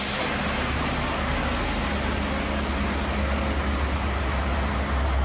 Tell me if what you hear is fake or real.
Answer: real